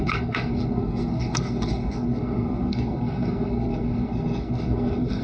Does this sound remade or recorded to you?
remade